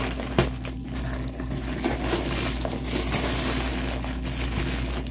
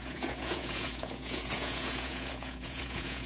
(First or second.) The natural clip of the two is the first